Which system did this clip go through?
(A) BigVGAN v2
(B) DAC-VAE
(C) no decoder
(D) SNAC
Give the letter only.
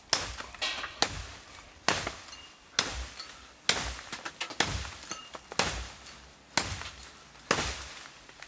C